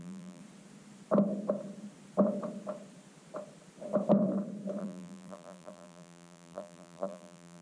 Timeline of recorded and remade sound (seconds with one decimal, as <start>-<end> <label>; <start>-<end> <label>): 0.0-0.4 remade; 0.4-4.8 recorded; 4.8-7.6 remade

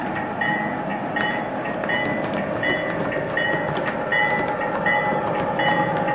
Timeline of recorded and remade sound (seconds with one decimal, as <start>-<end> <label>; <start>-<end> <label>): 0.0-6.1 recorded

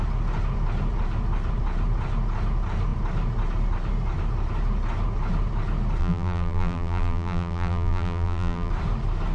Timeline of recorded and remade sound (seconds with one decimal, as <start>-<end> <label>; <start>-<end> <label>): 0.0-6.0 recorded; 6.0-8.7 remade; 8.7-9.3 recorded

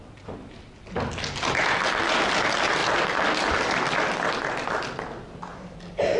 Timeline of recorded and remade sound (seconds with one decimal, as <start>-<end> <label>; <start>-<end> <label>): 0.0-2.8 recorded; 2.8-4.3 remade; 4.3-5.5 recorded; 5.5-6.2 remade

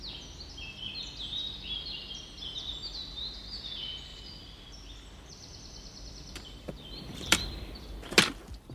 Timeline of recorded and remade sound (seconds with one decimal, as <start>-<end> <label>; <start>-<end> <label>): 0.0-4.1 recorded; 4.1-8.0 remade; 8.0-8.7 recorded

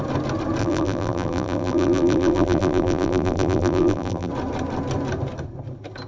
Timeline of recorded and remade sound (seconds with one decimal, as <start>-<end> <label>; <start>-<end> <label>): 0.0-0.6 recorded; 0.6-4.3 remade; 4.3-6.1 recorded

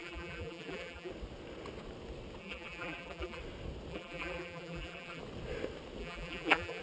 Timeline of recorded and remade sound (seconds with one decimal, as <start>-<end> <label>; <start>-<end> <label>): 0.0-1.1 remade; 1.1-2.4 recorded; 2.4-3.4 remade; 3.4-3.9 recorded; 3.9-5.2 remade; 5.2-6.0 recorded; 6.0-6.8 remade